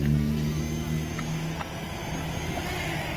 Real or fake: real